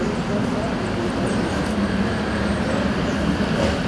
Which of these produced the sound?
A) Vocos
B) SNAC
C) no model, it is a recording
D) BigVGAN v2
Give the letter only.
D